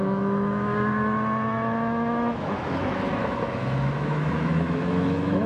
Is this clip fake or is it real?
fake